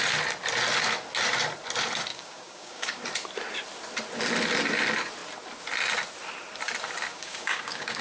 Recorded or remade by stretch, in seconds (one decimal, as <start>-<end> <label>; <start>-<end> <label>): 0.0-2.1 recorded; 2.1-3.0 remade; 3.0-7.1 recorded; 7.1-8.0 remade